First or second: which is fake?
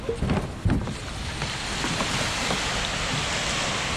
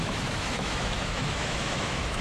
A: second